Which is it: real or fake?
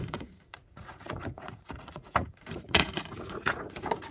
fake